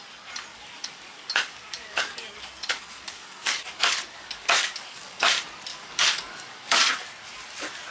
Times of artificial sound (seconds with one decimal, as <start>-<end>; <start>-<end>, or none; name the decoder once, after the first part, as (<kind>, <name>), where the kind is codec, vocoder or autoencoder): 0.5-5.2 (codec, DAC); 5.7-6.9